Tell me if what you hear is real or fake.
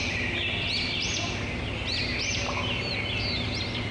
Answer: real